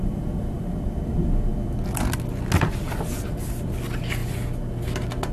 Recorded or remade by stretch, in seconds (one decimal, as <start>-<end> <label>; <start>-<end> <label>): 0.0-0.7 remade; 0.7-5.3 recorded